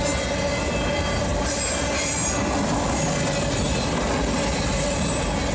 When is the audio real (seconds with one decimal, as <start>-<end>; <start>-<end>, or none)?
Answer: 0.0-5.5